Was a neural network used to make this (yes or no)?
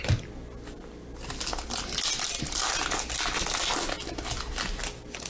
no